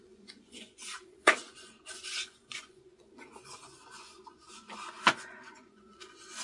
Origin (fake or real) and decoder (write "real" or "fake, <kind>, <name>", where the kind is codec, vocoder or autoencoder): fake, vocoder, Vocos